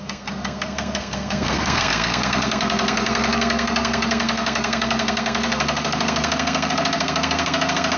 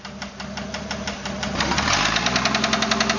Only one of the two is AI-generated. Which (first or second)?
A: first